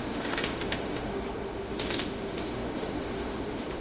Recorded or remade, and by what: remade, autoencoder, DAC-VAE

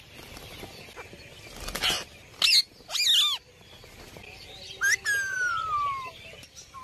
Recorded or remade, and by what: recorded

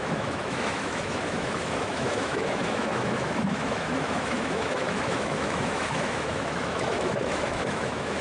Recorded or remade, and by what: remade, autoencoder, DAC-VAE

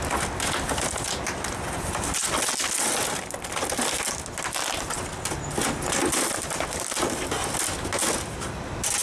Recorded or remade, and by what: recorded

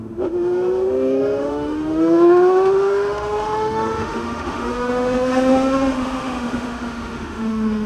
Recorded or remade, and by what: remade, autoencoder, DAC-VAE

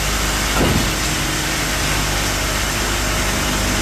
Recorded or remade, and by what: recorded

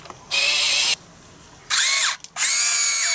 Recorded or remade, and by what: recorded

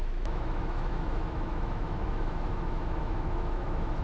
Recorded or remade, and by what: remade, autoencoder, DAC-VAE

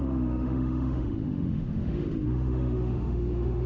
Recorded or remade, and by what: remade, autoencoder, DAC-VAE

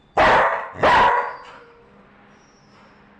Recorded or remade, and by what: recorded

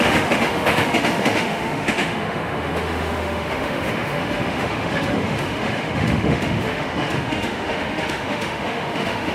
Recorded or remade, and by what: remade, autoencoder, DAC-VAE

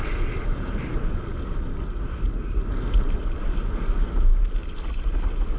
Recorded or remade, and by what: recorded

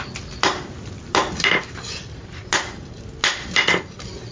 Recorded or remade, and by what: recorded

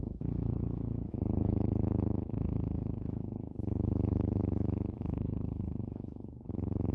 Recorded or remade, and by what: remade, autoencoder, DAC-VAE